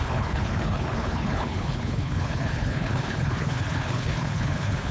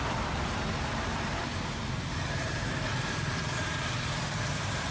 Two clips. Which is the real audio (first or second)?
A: second